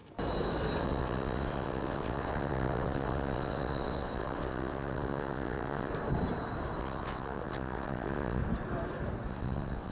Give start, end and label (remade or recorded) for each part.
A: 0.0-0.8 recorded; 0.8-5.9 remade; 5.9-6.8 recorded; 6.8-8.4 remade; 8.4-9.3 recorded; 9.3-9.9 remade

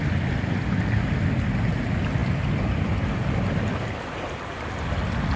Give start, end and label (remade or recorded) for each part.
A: 0.0-5.4 recorded

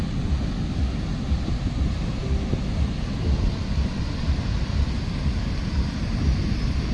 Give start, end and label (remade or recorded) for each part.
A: 0.0-6.9 recorded

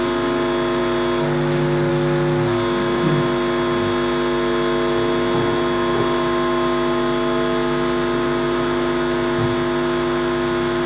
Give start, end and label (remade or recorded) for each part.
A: 0.0-10.9 recorded

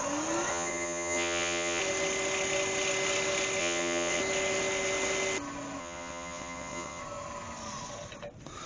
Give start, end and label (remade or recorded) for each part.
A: 0.0-0.5 recorded; 0.5-1.8 remade; 1.8-3.6 recorded; 3.6-4.2 remade; 4.2-5.8 recorded; 5.8-7.0 remade; 7.0-8.7 recorded

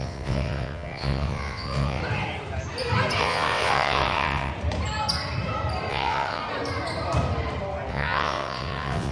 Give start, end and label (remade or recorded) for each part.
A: 0.0-2.0 remade; 2.0-3.2 recorded; 3.2-4.5 remade; 4.5-5.9 recorded; 5.9-6.4 remade; 6.4-7.9 recorded; 7.9-9.1 remade

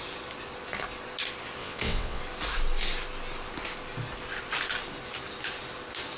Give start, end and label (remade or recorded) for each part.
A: 0.0-1.6 recorded; 1.6-2.2 remade; 2.2-6.2 recorded